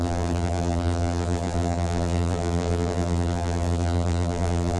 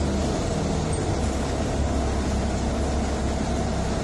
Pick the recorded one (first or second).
second